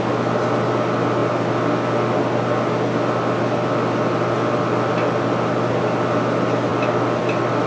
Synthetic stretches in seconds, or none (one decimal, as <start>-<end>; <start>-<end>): none